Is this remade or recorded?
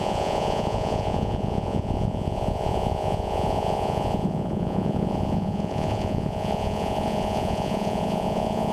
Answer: remade